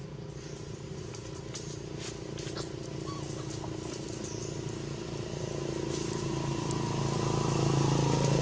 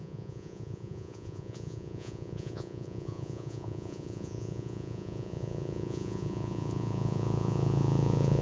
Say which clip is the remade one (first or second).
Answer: second